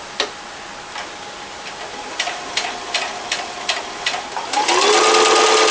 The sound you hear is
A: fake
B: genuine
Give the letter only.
B